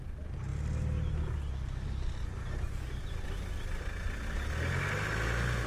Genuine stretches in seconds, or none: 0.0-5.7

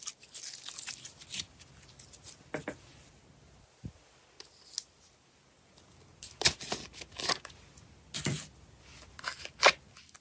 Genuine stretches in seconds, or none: 0.0-10.2

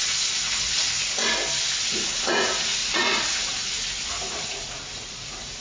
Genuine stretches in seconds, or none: 1.2-1.8

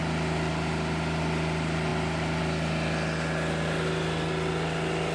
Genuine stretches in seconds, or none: 0.0-5.1

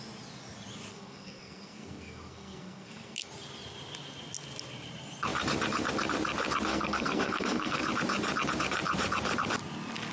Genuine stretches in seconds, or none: 0.0-0.9; 3.3-6.7; 7.8-10.1

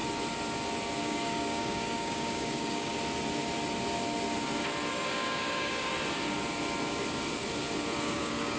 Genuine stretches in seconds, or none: 0.0-1.0; 2.9-4.9; 5.9-8.0

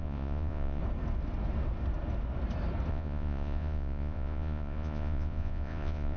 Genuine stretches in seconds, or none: 0.8-2.9